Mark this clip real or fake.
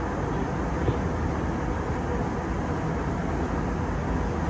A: real